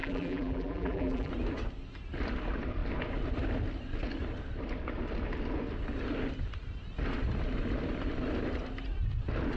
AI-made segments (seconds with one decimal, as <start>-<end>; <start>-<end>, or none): 0.0-1.3